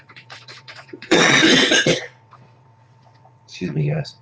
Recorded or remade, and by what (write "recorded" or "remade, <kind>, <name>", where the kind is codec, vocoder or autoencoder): remade, vocoder, WaveNeXt